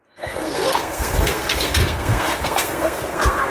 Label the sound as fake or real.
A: fake